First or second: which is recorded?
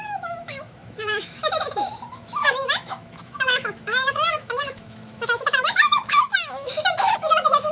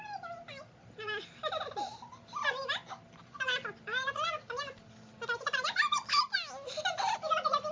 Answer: second